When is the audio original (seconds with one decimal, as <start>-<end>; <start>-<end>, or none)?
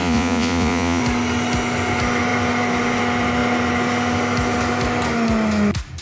1.0-6.0